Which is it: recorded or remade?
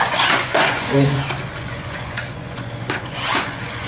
remade